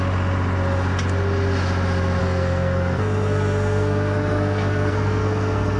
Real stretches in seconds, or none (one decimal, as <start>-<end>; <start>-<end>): 0.0-2.2